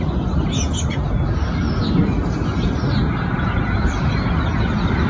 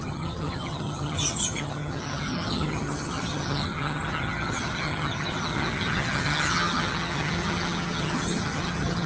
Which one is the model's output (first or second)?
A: second